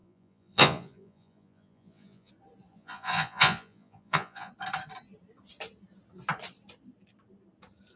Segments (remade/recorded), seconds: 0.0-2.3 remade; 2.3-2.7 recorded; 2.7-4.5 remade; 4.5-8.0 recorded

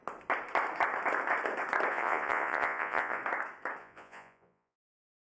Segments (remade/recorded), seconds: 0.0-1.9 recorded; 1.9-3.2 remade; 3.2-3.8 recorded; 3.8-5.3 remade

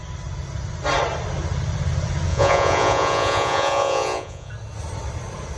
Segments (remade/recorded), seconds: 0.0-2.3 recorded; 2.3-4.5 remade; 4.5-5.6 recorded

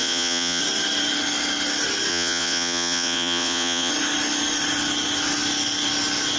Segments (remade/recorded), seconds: 0.0-0.6 remade; 0.6-2.1 recorded; 2.1-3.9 remade; 3.9-6.4 recorded

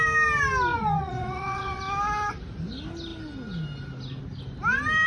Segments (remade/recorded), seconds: 0.0-0.7 recorded; 0.7-1.8 remade; 1.8-5.1 recorded